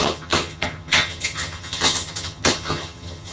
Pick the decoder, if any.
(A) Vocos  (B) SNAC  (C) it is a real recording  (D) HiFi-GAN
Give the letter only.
D